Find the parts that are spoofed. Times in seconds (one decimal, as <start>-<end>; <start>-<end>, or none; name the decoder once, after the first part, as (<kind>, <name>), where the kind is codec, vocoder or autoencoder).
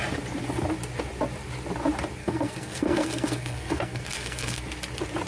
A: 2.2-4.6 (codec, SNAC)